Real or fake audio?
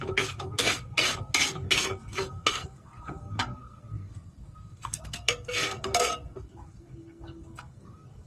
fake